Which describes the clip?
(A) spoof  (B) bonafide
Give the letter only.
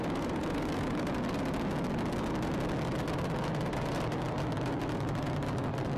B